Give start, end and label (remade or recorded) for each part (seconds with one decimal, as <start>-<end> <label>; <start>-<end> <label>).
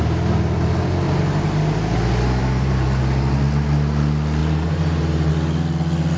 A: 0.0-2.4 recorded; 2.4-3.0 remade; 3.0-4.4 recorded; 4.4-5.3 remade; 5.3-6.2 recorded